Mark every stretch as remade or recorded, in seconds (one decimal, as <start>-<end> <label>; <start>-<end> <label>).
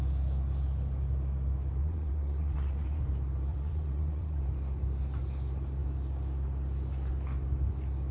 0.0-1.8 recorded; 1.8-3.0 remade; 3.0-3.5 recorded; 3.5-4.4 remade; 4.4-8.1 recorded